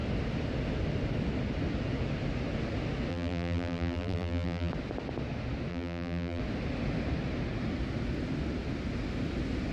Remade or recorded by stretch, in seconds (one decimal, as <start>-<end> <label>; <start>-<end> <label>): 0.0-3.1 recorded; 3.1-4.7 remade; 4.7-5.7 recorded; 5.7-6.4 remade; 6.4-9.7 recorded